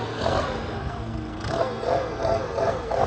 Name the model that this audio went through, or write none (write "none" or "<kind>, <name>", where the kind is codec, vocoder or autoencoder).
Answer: codec, SNAC